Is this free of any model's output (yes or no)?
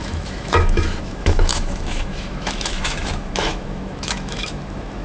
no